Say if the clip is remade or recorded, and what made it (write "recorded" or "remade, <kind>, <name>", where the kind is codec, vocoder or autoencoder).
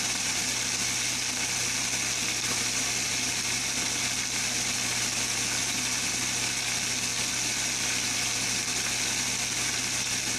recorded